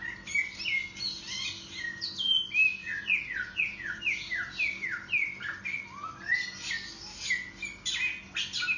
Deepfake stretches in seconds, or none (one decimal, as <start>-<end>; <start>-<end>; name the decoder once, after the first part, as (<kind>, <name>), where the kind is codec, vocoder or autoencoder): 2.8-4.0 (vocoder, Vocos)